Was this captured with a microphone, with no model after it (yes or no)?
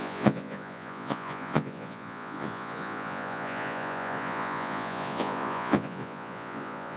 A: no